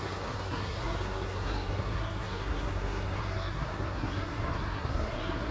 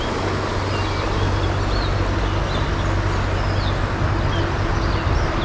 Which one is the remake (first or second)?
first